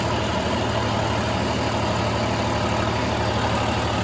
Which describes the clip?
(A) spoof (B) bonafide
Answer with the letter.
B